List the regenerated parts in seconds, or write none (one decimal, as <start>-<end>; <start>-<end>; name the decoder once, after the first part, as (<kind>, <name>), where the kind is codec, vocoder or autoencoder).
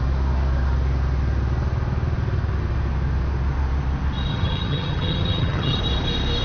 4.3-5.8 (vocoder, HiFi-GAN)